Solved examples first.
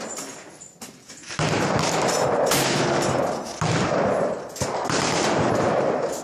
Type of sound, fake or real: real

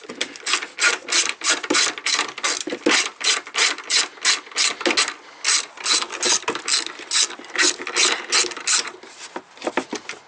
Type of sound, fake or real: real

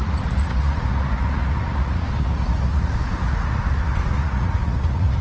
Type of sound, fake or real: fake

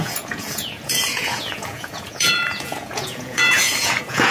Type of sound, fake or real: fake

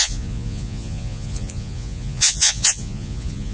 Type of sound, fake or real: fake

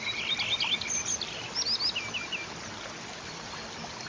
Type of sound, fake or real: real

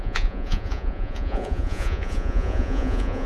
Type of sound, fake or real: fake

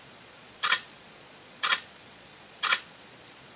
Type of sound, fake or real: fake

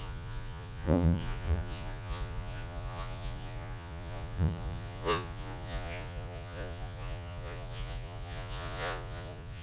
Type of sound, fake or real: fake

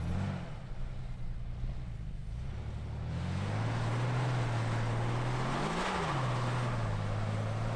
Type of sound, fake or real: real